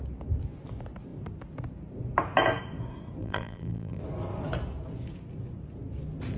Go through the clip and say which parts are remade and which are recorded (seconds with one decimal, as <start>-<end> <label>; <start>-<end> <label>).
0.0-3.2 recorded; 3.2-4.0 remade; 4.0-6.4 recorded